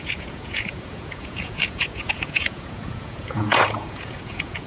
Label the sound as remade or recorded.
remade